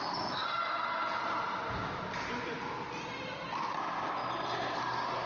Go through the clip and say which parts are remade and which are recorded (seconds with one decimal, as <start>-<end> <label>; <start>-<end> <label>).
0.0-5.3 recorded